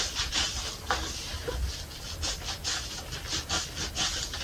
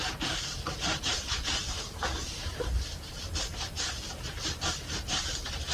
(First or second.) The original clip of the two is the first